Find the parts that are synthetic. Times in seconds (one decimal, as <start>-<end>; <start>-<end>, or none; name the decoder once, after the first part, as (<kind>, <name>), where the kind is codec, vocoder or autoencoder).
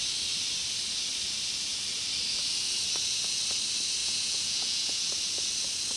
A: 4.0-5.1 (vocoder, Vocos)